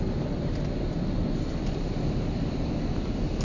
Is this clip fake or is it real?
fake